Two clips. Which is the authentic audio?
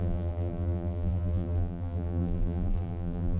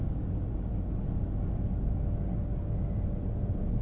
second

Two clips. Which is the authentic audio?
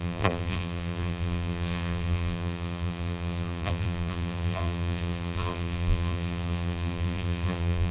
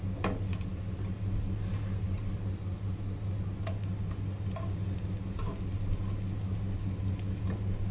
second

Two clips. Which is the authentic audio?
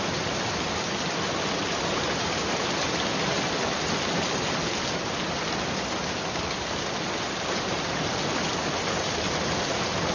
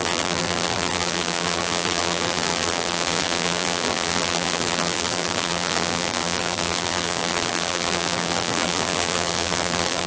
first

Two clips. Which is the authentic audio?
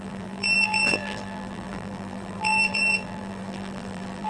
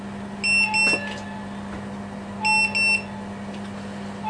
second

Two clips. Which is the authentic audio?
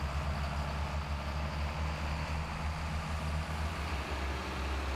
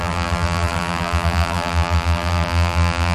first